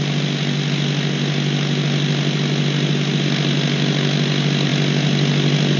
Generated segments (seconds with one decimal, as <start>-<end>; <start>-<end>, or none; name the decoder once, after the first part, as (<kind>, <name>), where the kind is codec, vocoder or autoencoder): none